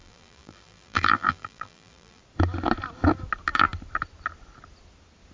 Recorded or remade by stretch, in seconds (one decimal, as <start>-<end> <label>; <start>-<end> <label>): 0.0-2.2 remade; 2.2-5.3 recorded